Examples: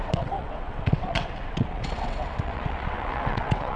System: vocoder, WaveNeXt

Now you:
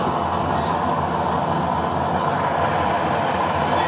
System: none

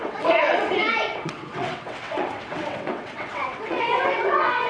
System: vocoder, WaveNeXt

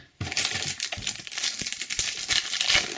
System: none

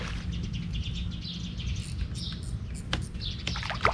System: none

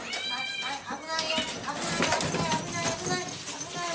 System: none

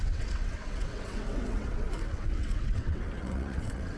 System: vocoder, WaveNeXt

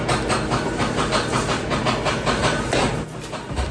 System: none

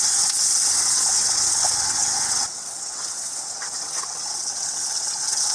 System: vocoder, WaveNeXt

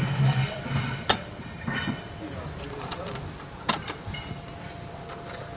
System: none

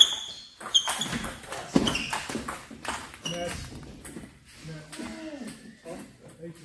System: none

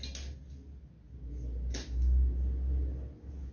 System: none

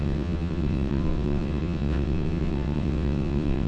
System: vocoder, WaveNeXt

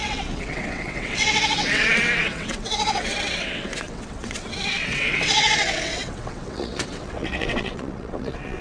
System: vocoder, WaveNeXt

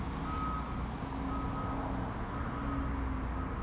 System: none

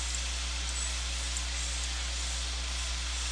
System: none